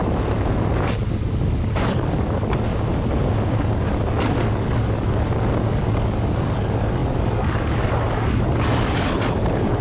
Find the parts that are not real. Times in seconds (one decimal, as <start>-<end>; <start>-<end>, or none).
0.0-2.7; 4.1-9.8

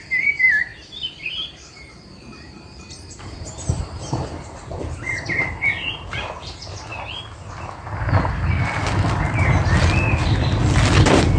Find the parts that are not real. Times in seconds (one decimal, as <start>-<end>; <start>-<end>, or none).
0.0-6.9